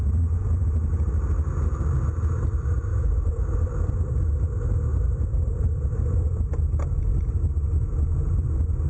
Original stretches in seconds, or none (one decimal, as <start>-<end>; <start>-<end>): 0.0-2.9; 4.1-4.9; 6.2-8.9